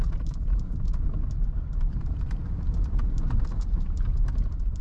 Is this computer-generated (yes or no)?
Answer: yes